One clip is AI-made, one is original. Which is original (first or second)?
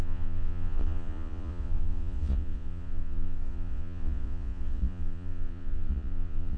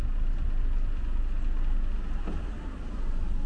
second